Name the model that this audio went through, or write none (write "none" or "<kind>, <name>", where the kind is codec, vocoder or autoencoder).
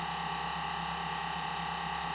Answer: none